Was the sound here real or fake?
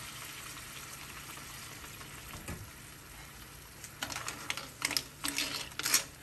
real